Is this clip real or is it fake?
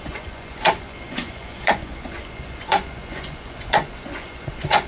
fake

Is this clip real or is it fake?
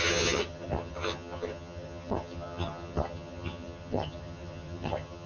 fake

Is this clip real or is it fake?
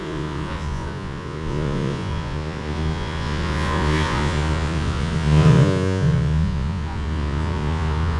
fake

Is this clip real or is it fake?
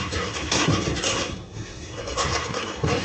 fake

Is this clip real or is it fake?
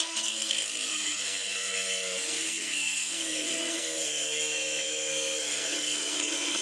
fake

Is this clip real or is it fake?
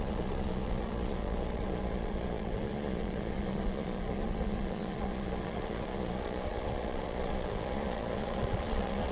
fake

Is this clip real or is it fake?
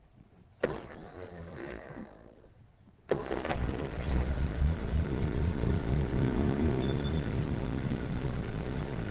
fake